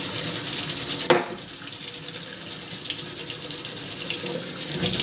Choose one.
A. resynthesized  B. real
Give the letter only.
B